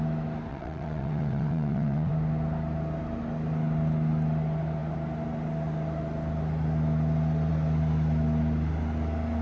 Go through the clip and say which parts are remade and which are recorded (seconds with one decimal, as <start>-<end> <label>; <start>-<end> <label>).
0.0-0.5 recorded; 0.5-2.1 remade; 2.1-9.4 recorded